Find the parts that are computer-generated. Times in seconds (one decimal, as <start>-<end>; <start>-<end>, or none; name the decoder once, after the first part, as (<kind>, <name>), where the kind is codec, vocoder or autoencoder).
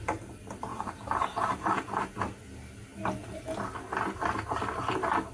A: 0.7-1.7 (vocoder, BigVGAN v2)